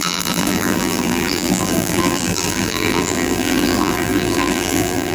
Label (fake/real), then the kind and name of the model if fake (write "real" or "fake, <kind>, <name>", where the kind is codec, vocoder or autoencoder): fake, vocoder, BigVGAN v2